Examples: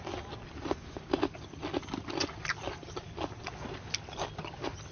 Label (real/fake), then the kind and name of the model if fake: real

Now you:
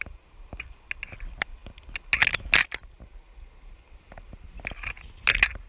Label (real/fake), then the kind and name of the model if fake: real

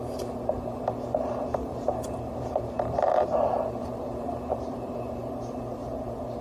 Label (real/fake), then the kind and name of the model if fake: fake, vocoder, BigVGAN v2